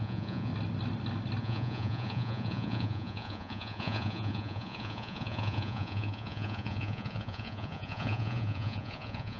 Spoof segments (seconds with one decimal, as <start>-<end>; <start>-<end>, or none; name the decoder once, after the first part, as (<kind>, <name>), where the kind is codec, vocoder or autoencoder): 0.0-0.5 (vocoder, Vocos); 1.4-9.4